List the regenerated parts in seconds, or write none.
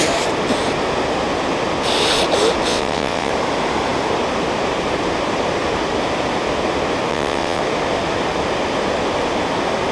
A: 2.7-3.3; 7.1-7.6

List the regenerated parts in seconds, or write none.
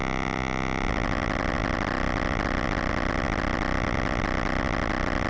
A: none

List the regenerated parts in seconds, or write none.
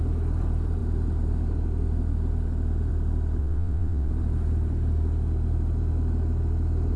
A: 3.4-4.1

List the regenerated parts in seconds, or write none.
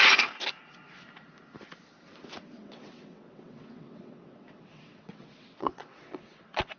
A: 2.6-6.8